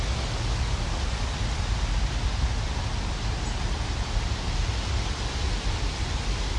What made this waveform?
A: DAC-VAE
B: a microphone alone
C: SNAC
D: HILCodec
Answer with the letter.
B